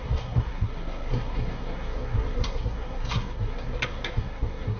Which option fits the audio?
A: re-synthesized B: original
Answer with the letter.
A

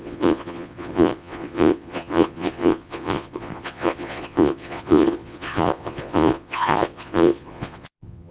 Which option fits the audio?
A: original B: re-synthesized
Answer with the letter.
B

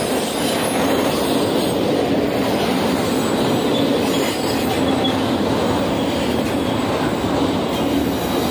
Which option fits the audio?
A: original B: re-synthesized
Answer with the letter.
A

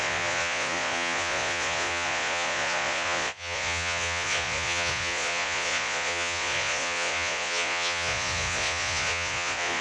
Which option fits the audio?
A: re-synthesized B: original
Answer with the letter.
A